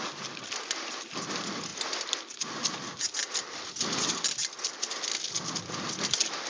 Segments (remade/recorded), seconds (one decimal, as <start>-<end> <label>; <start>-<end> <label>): 0.0-6.5 recorded